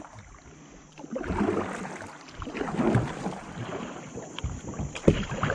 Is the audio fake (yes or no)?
no